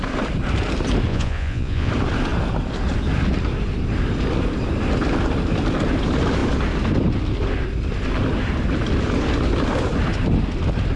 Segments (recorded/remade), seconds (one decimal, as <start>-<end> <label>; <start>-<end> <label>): 0.0-1.1 recorded; 1.1-1.9 remade; 1.9-11.0 recorded